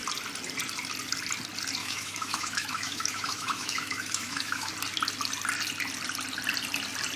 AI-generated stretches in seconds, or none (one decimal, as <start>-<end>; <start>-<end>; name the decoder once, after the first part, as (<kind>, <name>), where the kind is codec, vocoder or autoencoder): 1.8-4.7 (autoencoder, DAC-VAE)